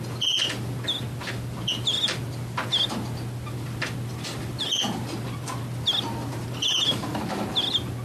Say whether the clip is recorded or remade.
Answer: recorded